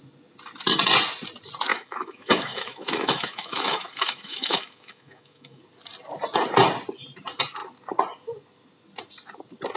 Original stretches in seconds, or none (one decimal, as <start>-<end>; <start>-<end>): 0.0-1.7; 5.6-9.8